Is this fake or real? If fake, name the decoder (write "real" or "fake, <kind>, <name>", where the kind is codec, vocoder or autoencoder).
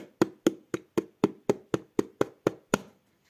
real